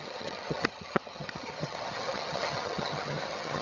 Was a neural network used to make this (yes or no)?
yes